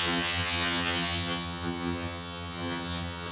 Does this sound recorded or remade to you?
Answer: remade